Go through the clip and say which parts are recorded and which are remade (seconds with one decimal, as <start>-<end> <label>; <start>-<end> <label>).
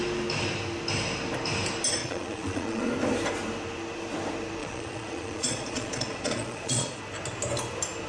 0.0-2.0 recorded; 2.0-2.9 remade; 2.9-4.6 recorded; 4.6-7.0 remade; 7.0-8.1 recorded